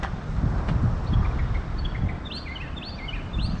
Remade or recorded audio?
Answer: recorded